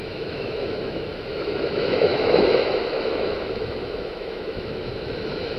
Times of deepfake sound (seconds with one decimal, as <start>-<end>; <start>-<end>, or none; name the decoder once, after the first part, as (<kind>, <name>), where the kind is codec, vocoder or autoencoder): 0.0-5.6 (autoencoder, DAC-VAE)